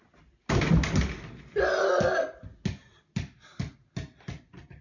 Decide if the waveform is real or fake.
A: real